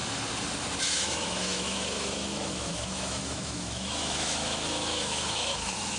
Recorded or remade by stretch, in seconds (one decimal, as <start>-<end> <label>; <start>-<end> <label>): 0.0-0.8 recorded; 0.8-6.0 remade